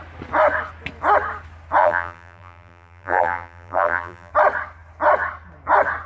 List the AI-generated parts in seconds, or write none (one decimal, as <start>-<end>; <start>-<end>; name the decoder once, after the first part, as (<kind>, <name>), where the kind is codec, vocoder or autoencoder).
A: 1.8-4.3 (vocoder, BigVGAN v2)